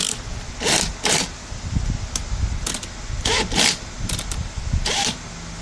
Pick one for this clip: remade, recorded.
recorded